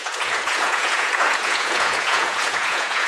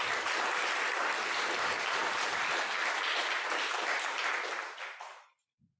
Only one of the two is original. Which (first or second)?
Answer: second